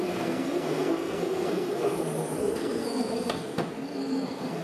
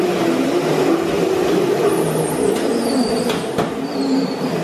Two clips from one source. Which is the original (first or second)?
second